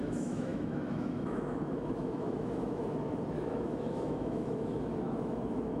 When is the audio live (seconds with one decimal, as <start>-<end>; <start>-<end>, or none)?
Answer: none